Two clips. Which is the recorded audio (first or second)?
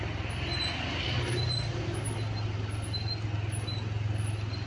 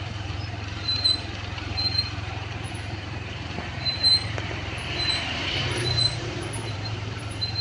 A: first